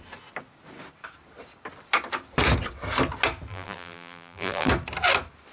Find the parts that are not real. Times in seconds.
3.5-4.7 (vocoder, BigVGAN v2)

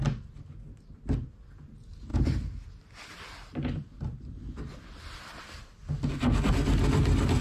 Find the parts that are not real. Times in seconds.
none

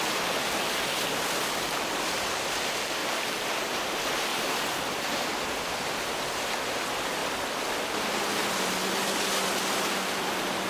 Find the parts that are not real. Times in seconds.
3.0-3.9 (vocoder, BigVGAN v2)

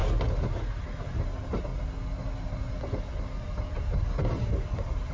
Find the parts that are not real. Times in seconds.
1.0-1.7 (vocoder, BigVGAN v2)

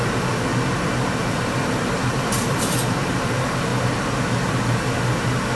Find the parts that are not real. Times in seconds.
0.0-0.5 (vocoder, BigVGAN v2); 1.2-3.7; 4.7-5.6